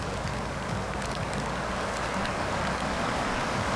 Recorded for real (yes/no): no